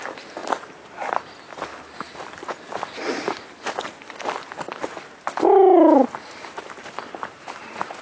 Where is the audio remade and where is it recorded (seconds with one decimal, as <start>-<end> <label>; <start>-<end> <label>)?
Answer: 0.0-8.0 recorded